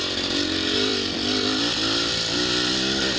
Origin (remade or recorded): remade